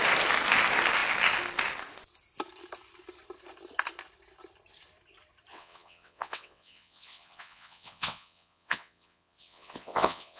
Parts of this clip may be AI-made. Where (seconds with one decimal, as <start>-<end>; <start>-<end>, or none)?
5.5-10.4